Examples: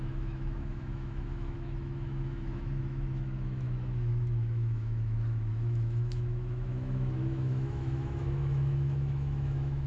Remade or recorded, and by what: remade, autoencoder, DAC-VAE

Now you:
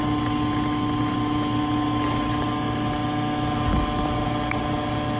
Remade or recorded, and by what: recorded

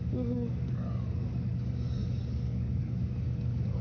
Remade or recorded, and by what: remade, codec, DAC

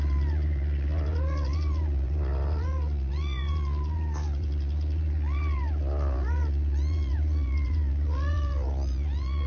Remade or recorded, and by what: remade, vocoder, Vocos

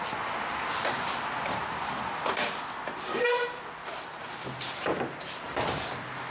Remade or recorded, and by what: recorded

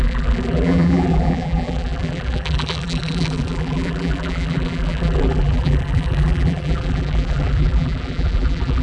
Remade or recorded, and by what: remade, vocoder, BigVGAN v2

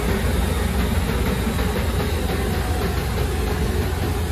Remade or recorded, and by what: recorded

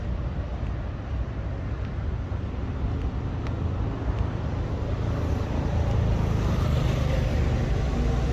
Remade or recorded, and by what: recorded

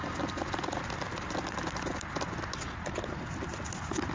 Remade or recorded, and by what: recorded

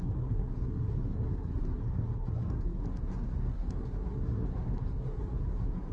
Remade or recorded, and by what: remade, codec, SNAC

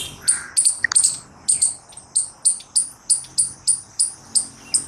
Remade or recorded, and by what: recorded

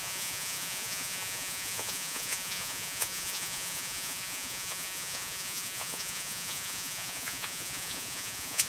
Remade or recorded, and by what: remade, vocoder, Vocos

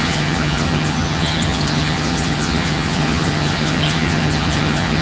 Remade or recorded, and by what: remade, vocoder, HiFi-GAN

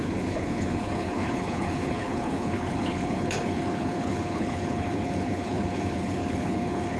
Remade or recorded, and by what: remade, codec, HILCodec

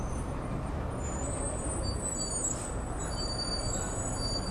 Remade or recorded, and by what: recorded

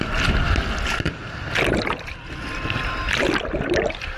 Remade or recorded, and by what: recorded